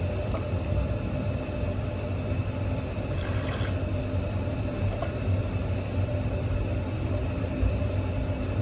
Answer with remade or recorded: recorded